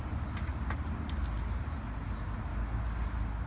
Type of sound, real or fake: real